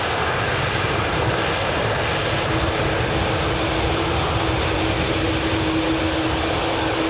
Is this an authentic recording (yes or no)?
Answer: yes